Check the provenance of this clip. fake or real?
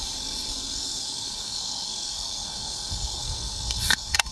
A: fake